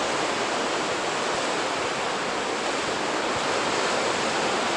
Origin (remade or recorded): recorded